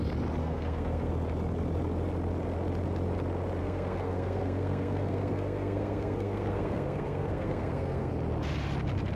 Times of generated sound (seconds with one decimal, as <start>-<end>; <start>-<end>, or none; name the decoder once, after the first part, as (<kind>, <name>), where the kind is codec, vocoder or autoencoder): 0.4-1.1 (codec, SNAC); 3.6-8.1